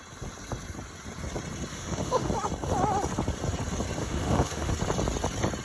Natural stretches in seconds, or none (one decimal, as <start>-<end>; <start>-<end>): 0.0-1.7; 2.3-4.0; 4.7-5.6